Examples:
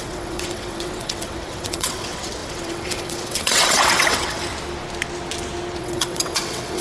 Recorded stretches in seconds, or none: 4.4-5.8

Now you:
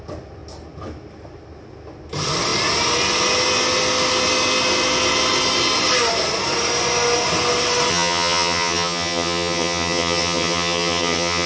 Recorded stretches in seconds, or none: 0.0-7.9